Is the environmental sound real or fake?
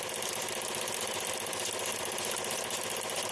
real